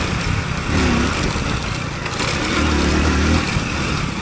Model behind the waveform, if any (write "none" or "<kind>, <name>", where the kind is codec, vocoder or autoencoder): none